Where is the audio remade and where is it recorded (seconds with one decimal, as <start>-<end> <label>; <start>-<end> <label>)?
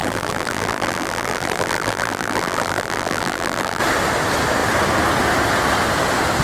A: 0.0-3.8 remade; 3.8-6.4 recorded